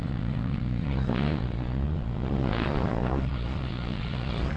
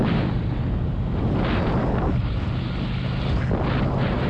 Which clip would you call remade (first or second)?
first